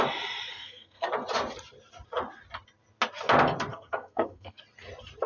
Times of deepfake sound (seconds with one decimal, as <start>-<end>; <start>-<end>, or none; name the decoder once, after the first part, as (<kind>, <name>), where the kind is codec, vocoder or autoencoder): 0.5-1.1 (codec, SNAC); 3.7-4.6